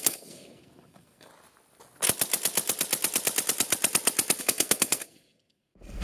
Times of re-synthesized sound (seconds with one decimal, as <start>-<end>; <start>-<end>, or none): 0.0-1.3; 4.4-6.0

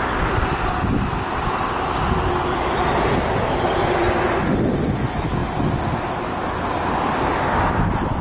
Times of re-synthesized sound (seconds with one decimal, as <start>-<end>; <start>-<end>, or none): none

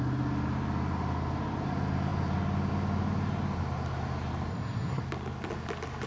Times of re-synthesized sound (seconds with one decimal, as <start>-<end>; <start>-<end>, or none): 4.5-5.0